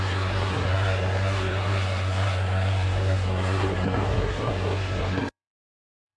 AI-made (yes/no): yes